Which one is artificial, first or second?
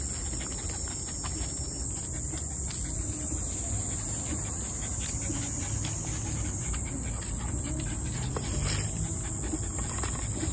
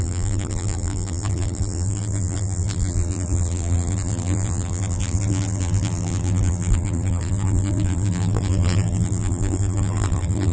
second